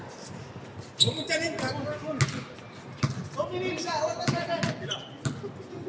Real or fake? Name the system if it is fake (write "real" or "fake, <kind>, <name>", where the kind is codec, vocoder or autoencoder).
real